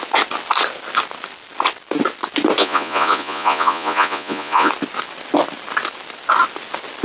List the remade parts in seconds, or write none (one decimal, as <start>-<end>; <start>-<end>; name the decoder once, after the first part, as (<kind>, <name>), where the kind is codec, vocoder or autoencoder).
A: 2.6-4.7 (vocoder, Vocos)